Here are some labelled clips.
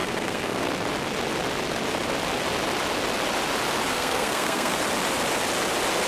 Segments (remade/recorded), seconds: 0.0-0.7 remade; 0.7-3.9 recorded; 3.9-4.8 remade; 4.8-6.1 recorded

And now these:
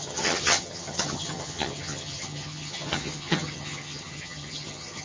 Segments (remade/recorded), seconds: 0.0-5.0 remade